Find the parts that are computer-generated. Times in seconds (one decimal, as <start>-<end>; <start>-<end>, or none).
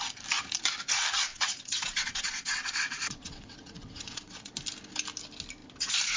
1.3-4.5